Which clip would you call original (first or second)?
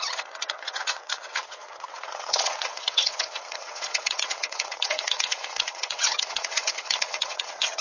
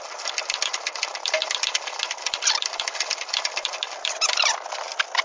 second